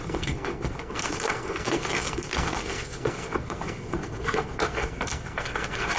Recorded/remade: remade